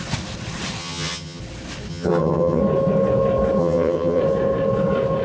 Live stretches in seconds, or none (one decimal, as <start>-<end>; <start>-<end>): 0.0-0.8; 1.4-1.9; 2.6-3.6; 4.2-5.2